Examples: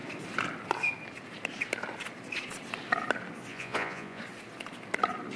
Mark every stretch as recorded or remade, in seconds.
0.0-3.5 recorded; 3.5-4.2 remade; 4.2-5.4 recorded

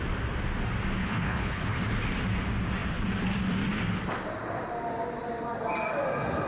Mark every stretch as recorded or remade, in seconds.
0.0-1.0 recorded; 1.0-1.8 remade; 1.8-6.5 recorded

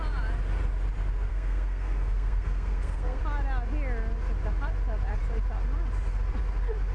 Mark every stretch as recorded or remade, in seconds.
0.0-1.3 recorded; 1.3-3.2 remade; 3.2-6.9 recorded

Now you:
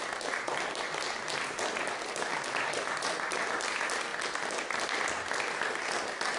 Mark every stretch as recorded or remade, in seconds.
0.0-6.4 recorded

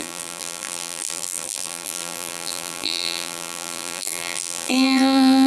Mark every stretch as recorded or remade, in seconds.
0.0-5.5 remade